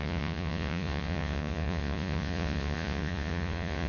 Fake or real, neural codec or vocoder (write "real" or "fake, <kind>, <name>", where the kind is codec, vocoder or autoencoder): fake, vocoder, Vocos